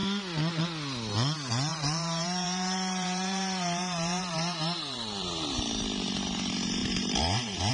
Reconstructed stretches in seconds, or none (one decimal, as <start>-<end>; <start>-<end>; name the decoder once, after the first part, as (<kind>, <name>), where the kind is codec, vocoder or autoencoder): 1.7-5.6 (vocoder, BigVGAN v2); 6.8-7.7